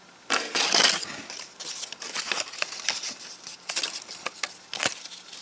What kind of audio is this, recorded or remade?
recorded